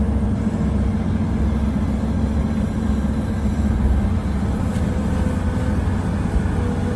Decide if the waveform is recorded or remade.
recorded